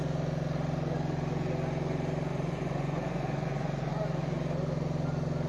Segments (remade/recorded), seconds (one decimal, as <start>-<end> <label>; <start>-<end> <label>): 0.0-2.3 recorded; 2.3-3.9 remade; 3.9-5.5 recorded